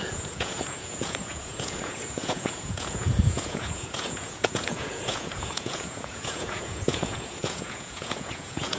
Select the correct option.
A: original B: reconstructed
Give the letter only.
B